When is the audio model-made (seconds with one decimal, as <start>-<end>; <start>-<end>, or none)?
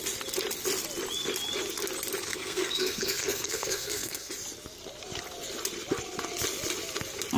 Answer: 2.3-4.3